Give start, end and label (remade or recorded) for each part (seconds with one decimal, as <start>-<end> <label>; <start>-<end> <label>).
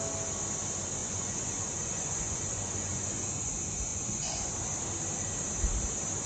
0.0-1.0 recorded; 1.0-3.5 remade; 3.5-3.9 recorded; 3.9-4.5 remade; 4.5-6.3 recorded